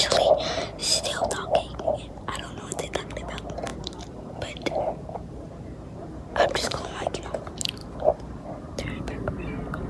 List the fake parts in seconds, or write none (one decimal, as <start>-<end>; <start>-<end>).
0.8-2.2; 3.7-7.2; 7.8-9.3